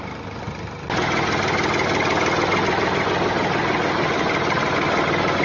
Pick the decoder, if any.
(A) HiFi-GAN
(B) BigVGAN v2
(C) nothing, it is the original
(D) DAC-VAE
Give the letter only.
C